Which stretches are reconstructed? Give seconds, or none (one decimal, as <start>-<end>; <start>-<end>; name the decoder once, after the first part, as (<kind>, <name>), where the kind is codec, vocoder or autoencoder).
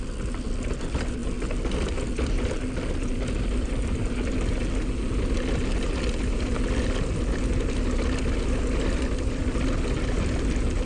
none